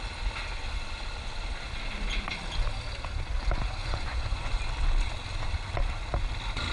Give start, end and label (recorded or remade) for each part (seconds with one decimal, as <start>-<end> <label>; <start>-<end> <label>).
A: 0.0-3.8 recorded; 3.8-4.6 remade; 4.6-6.7 recorded